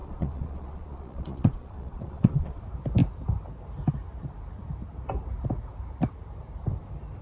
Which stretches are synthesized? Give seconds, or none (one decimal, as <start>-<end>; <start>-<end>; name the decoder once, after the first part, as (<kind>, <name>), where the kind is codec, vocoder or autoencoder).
0.0-2.6 (vocoder, Vocos)